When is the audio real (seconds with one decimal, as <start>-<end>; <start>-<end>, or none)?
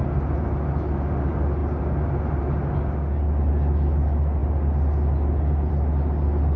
0.0-6.6